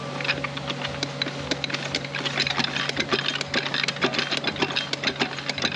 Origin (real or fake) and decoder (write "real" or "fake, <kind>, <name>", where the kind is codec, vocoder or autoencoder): real